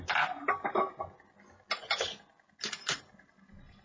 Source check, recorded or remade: recorded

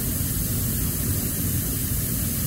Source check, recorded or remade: recorded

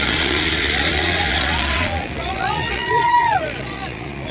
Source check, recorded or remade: remade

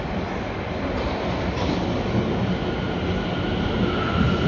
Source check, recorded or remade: recorded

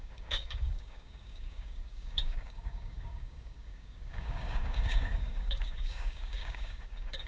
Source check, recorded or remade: remade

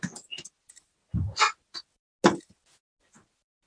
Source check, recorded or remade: recorded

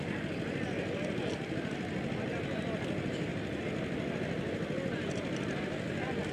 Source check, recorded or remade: recorded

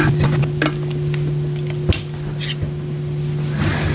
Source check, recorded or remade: recorded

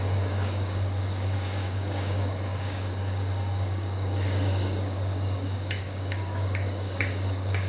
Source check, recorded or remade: remade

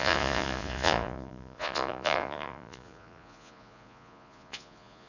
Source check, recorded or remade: remade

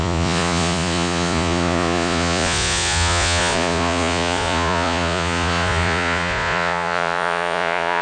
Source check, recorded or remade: remade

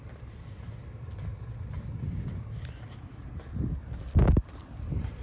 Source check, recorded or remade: recorded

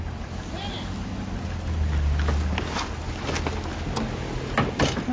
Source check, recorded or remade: recorded